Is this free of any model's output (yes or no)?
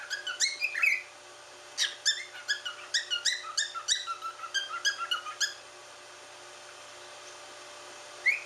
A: yes